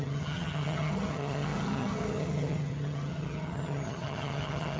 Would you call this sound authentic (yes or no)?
no